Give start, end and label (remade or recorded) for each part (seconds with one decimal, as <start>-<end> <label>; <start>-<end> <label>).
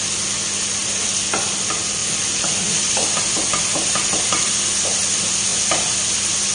0.0-0.8 recorded; 0.8-1.6 remade; 1.6-5.5 recorded; 5.5-6.0 remade; 6.0-6.5 recorded